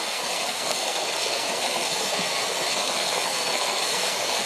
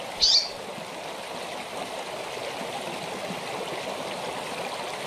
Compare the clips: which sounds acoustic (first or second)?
second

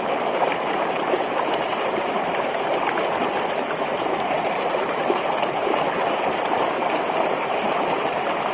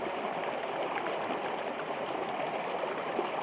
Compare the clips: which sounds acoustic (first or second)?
second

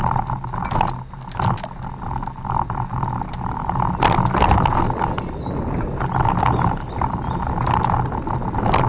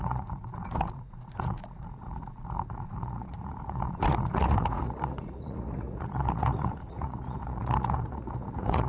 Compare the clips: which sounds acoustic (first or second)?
first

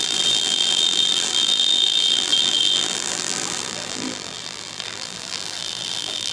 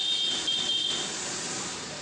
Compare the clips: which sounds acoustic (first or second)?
second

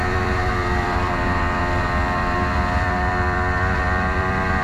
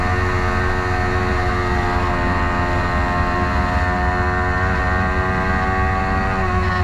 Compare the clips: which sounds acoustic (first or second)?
second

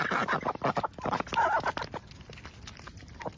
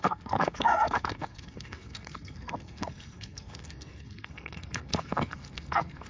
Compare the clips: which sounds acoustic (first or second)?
first